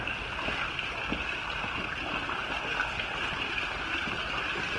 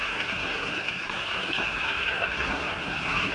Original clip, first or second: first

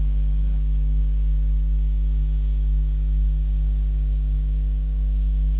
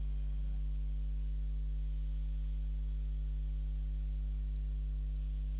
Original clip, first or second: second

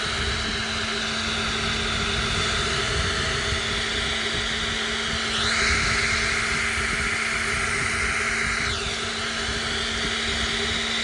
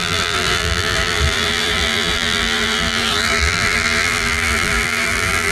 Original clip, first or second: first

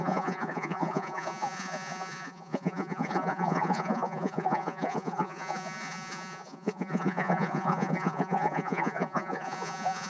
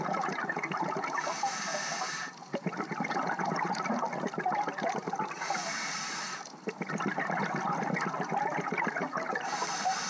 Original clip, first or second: second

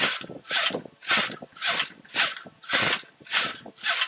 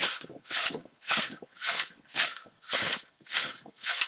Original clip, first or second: first